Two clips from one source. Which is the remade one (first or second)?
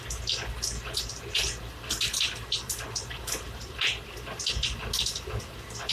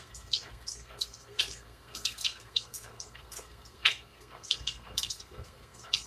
second